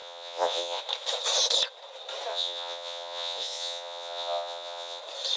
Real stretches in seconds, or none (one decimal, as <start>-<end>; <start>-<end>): 0.8-2.3; 5.0-5.4